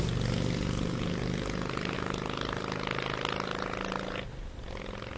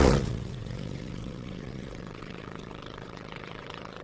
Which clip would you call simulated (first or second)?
second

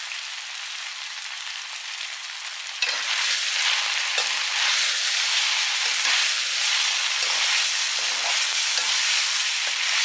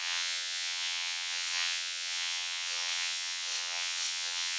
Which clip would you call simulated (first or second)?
second